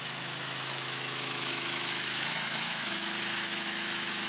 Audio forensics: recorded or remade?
remade